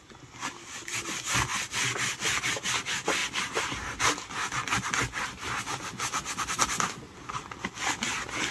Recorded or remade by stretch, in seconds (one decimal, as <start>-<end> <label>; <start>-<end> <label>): 0.0-3.2 recorded; 3.2-5.6 remade; 5.6-8.5 recorded

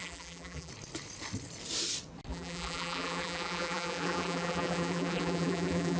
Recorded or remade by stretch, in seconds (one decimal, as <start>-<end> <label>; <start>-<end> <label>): 0.0-0.7 remade; 0.7-2.3 recorded; 2.3-6.0 remade

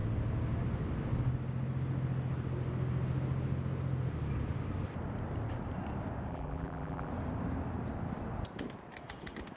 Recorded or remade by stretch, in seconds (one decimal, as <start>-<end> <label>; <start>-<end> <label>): 0.0-6.3 recorded; 6.3-7.1 remade; 7.1-9.6 recorded

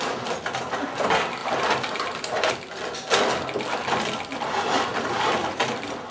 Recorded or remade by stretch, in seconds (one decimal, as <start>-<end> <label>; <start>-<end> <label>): 0.0-1.4 recorded; 1.4-2.5 remade; 2.5-4.9 recorded; 4.9-5.6 remade; 5.6-6.1 recorded

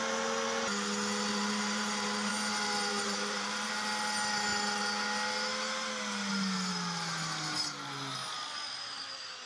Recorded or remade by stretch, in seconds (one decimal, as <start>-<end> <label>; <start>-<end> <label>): 0.0-1.3 recorded; 1.3-2.3 remade; 2.3-2.9 recorded; 2.9-3.7 remade; 3.7-9.5 recorded

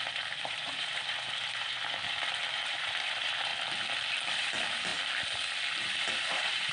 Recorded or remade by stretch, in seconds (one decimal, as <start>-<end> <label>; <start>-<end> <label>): 0.0-3.5 remade; 3.5-4.3 recorded; 4.3-4.9 remade; 4.9-6.0 recorded; 6.0-6.7 remade